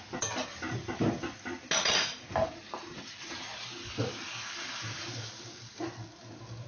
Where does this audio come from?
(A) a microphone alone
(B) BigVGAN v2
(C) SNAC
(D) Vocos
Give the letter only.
A